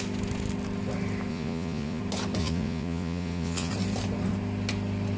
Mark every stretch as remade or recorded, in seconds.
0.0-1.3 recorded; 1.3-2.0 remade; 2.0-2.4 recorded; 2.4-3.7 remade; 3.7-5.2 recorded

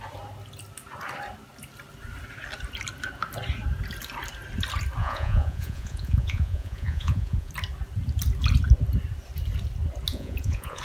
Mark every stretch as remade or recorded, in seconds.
0.0-5.0 recorded; 5.0-7.5 remade; 7.5-10.1 recorded; 10.1-10.8 remade

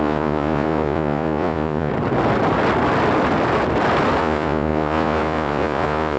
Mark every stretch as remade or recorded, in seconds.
0.0-1.9 remade; 1.9-4.2 recorded; 4.2-6.2 remade

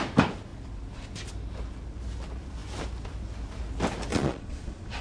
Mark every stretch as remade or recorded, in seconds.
0.0-4.1 recorded; 4.1-5.0 remade